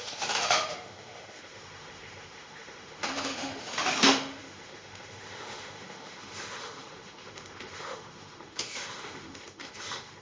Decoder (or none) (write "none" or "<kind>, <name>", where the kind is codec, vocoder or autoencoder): autoencoder, DAC-VAE